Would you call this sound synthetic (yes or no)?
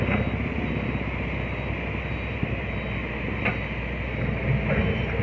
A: no